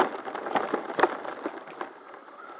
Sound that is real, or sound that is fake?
real